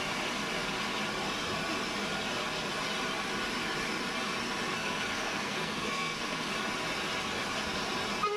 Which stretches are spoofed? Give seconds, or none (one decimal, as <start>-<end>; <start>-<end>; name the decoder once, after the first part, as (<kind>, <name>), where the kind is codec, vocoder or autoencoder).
4.7-6.5 (codec, SNAC)

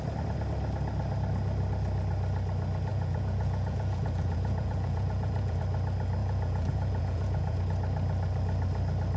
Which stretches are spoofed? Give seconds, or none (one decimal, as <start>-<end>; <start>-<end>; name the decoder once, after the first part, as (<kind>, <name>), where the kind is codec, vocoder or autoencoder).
2.9-5.6 (vocoder, Vocos); 6.2-7.6

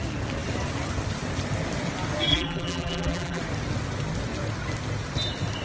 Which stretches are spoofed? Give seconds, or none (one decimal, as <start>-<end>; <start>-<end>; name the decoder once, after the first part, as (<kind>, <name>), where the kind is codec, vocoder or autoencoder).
2.3-3.4 (vocoder, BigVGAN v2)

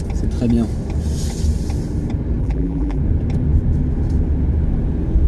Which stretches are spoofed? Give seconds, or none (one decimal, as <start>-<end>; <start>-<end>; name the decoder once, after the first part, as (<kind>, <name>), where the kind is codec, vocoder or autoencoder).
2.4-3.0 (vocoder, BigVGAN v2)

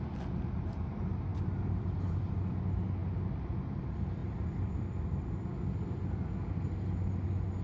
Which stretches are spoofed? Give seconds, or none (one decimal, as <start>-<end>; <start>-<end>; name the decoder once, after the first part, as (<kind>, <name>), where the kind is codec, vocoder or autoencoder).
1.3-2.5 (vocoder, BigVGAN v2); 4.2-4.7

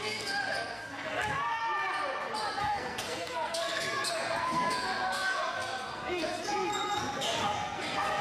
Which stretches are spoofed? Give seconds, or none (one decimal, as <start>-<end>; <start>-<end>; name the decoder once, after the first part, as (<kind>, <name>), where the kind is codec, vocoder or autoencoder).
0.0-1.6 (codec, SNAC); 2.6-8.2

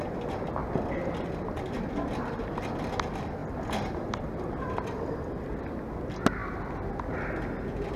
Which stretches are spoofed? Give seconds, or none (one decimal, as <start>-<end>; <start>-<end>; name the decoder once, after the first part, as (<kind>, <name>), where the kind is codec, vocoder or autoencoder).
none